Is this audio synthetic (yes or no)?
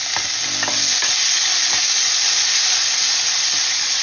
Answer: no